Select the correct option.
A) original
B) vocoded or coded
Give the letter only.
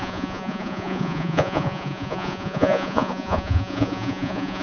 B